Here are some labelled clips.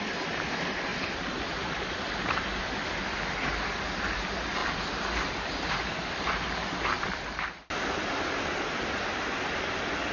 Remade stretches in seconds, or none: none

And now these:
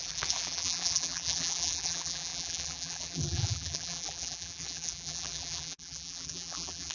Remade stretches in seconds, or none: 0.0-6.9 (vocoder, BigVGAN v2)